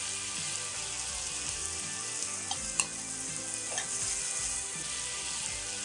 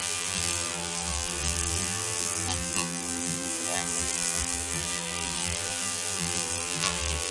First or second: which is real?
first